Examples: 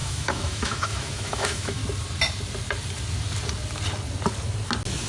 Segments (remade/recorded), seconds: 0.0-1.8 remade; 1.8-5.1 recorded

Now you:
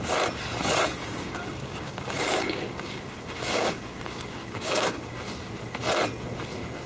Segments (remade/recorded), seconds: 0.0-1.0 recorded; 1.0-5.1 remade; 5.1-6.9 recorded

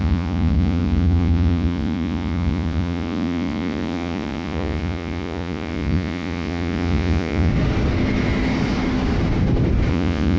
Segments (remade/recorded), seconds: 0.0-7.5 remade; 7.5-9.9 recorded; 9.9-10.4 remade

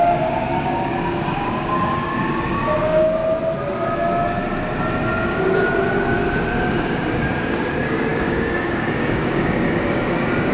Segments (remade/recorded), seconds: 0.0-3.2 remade; 3.2-6.5 recorded; 6.5-10.5 remade